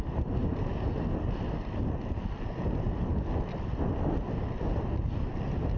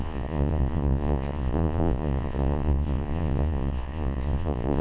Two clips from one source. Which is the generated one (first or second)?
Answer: second